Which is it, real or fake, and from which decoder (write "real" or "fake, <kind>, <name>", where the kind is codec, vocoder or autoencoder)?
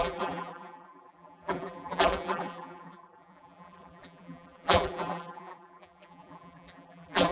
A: fake, vocoder, BigVGAN v2